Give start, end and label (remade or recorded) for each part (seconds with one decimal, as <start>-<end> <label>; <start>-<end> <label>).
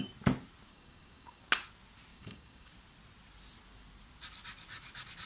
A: 0.0-0.7 recorded; 0.7-1.4 remade; 1.4-2.1 recorded; 2.1-2.7 remade; 2.7-5.3 recorded